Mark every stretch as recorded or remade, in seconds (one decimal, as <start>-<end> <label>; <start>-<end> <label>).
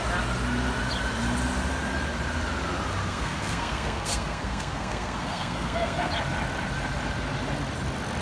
0.0-3.0 recorded; 3.0-6.1 remade; 6.1-8.2 recorded